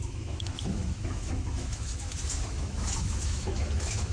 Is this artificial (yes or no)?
yes